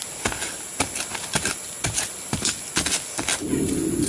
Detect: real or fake real